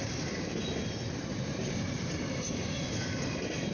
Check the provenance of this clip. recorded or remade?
recorded